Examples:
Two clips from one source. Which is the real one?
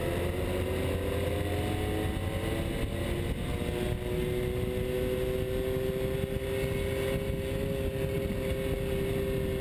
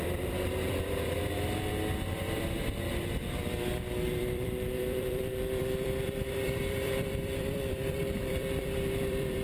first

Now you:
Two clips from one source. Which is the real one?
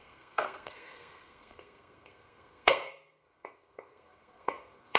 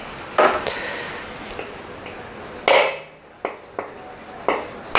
second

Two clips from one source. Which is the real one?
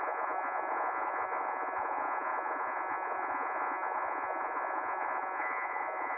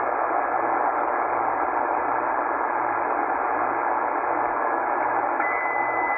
second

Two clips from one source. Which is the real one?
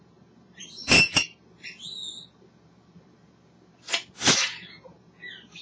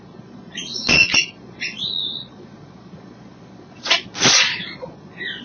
first